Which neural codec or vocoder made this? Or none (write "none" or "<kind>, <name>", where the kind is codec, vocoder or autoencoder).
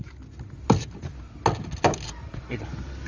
none